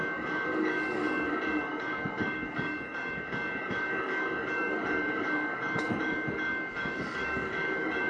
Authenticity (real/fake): fake